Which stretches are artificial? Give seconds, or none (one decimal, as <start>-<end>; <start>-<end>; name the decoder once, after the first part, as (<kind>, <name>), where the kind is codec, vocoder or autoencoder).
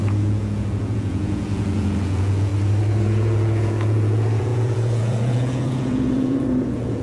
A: 0.0-2.5 (vocoder, Vocos); 3.0-7.0